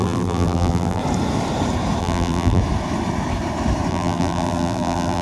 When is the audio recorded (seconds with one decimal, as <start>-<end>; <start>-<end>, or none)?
1.0-2.0; 2.6-3.9